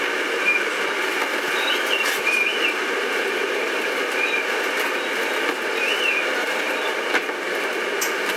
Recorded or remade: recorded